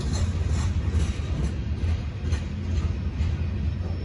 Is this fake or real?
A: real